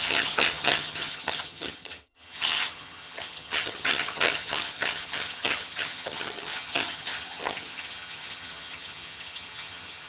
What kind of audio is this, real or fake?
fake